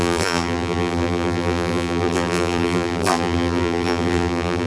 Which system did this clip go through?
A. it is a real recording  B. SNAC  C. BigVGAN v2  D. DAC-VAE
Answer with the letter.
C